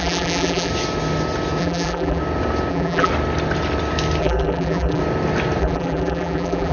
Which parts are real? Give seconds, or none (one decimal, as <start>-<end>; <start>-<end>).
0.7-1.6; 2.2-2.7; 3.1-4.2; 5.0-5.6